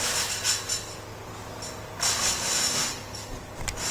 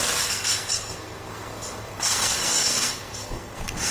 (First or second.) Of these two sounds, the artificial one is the second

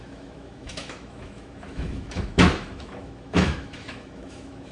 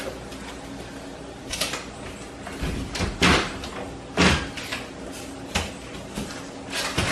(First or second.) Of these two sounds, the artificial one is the first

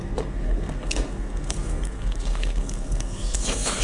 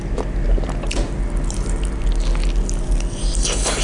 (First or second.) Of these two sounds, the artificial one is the first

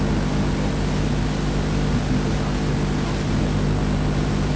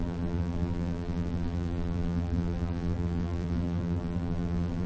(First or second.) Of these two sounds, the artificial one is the second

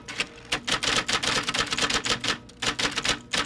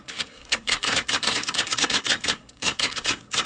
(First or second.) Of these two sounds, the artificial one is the second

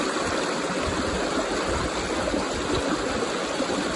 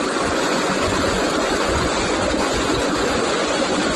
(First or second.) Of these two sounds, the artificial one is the second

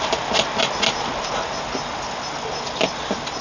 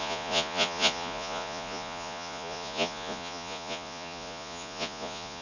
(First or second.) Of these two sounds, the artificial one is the second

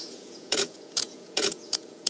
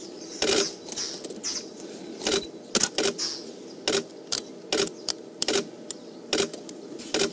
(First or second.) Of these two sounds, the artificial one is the first